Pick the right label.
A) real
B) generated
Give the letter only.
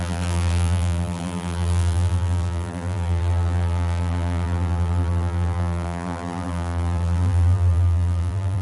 B